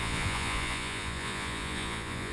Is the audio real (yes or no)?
no